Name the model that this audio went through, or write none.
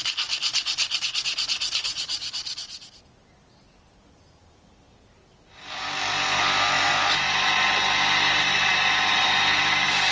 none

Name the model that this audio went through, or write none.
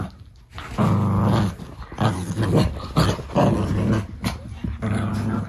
none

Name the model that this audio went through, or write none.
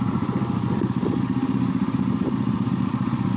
none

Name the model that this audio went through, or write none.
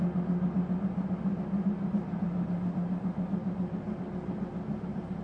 none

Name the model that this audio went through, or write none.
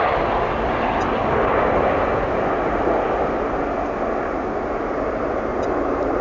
none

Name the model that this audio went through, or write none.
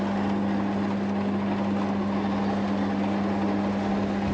none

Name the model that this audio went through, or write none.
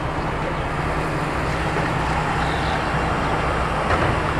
none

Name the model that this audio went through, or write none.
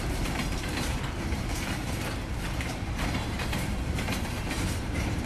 vocoder, BigVGAN v2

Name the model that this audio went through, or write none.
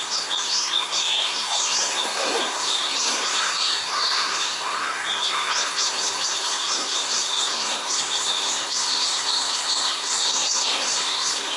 codec, SNAC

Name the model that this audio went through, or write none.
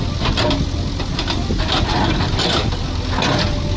none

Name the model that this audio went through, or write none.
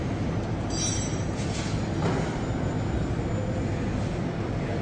none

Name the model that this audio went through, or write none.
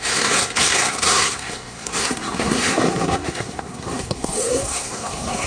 codec, SNAC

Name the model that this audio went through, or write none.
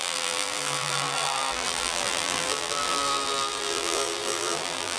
vocoder, BigVGAN v2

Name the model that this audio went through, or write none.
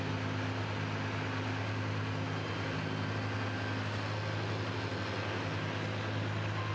none